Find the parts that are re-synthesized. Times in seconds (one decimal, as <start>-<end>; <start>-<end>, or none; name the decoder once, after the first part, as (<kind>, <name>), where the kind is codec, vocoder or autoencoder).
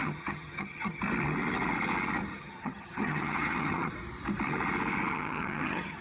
0.0-1.0 (vocoder, HiFi-GAN); 2.3-3.9; 5.1-6.0